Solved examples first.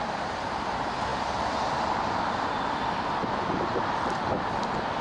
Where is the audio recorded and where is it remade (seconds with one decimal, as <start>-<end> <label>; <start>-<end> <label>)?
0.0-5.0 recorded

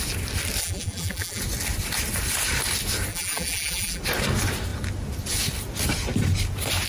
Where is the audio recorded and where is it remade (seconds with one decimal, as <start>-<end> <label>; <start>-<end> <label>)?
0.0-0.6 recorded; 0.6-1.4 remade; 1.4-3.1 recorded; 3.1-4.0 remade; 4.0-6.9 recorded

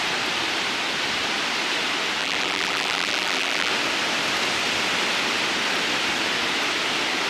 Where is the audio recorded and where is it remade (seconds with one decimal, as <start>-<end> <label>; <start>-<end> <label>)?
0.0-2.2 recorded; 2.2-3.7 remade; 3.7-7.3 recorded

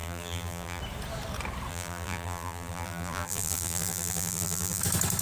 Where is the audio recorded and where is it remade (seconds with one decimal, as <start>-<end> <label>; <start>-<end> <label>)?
0.0-0.8 remade; 0.8-1.7 recorded; 1.7-4.8 remade; 4.8-5.2 recorded